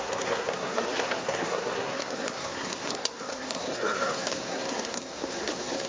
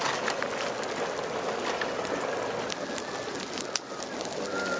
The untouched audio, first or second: second